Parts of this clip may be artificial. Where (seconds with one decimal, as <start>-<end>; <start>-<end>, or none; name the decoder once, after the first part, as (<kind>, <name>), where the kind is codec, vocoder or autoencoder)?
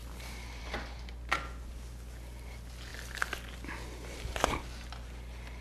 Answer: none